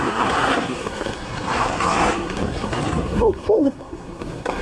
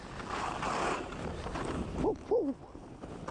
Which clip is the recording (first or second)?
second